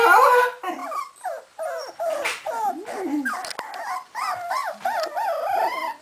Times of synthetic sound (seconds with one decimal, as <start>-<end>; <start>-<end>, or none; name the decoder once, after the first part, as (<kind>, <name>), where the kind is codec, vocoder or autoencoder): 4.6-5.1 (vocoder, BigVGAN v2)

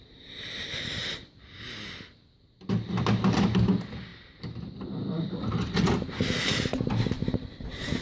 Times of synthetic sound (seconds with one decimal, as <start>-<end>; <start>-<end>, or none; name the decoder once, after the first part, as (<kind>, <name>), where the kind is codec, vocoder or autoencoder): 4.1-6.6 (vocoder, BigVGAN v2)

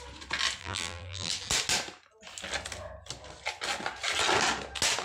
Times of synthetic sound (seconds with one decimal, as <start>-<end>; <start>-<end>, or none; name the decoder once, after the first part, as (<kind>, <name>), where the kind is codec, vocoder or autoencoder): 0.6-1.3 (vocoder, BigVGAN v2)

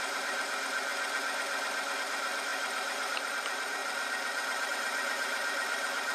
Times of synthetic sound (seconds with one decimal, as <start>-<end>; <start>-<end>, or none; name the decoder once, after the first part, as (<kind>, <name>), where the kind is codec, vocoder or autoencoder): 0.0-0.9 (vocoder, BigVGAN v2); 2.0-3.8; 4.7-6.1